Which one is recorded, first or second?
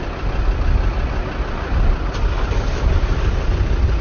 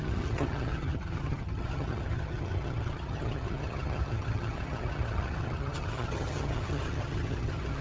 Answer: first